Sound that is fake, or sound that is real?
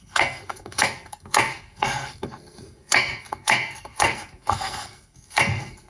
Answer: fake